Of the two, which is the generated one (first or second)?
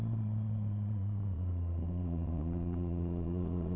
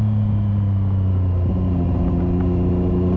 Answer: first